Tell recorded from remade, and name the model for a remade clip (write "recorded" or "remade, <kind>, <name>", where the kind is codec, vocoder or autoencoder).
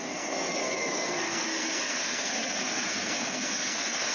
remade, codec, SNAC